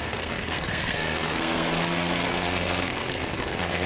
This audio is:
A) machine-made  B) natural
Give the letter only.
A